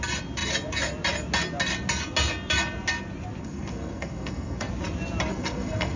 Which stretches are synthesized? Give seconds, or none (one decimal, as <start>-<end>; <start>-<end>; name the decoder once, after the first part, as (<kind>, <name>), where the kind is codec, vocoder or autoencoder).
3.4-4.7 (codec, SNAC); 5.3-6.0